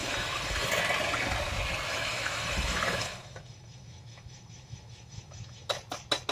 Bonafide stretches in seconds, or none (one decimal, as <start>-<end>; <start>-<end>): 0.7-1.9; 5.7-6.3